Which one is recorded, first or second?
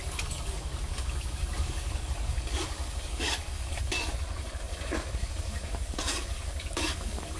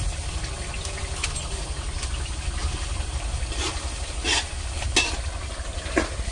second